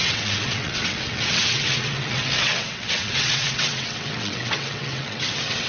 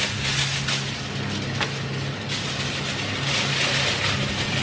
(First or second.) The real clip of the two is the second